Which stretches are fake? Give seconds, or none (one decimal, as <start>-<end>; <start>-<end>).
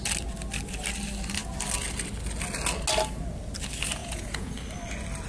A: 4.0-4.5